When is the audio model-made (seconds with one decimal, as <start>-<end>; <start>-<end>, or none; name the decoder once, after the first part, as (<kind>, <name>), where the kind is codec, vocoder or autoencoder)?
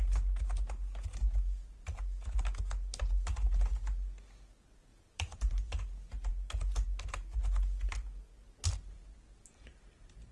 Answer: 4.9-5.8 (vocoder, BigVGAN v2)